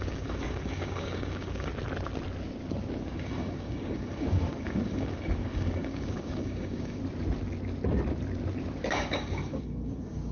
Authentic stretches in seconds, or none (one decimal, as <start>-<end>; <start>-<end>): 1.7-3.0; 7.0-8.9